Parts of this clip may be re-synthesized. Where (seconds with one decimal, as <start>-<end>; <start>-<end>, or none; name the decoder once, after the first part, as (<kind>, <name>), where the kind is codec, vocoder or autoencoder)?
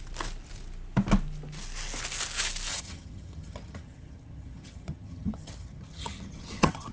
2.7-6.9 (vocoder, HiFi-GAN)